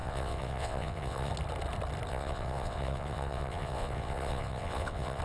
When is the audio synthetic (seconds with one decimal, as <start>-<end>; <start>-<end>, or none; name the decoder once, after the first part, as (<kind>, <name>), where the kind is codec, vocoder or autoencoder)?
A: 0.0-1.3 (vocoder, WaveNeXt); 2.1-5.2